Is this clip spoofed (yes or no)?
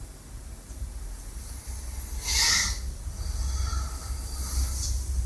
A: no